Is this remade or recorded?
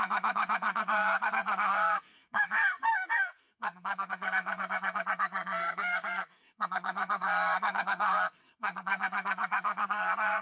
remade